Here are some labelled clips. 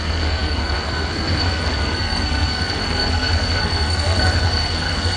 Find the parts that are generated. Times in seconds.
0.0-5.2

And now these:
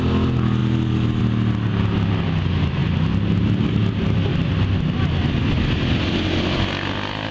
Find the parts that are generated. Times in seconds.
none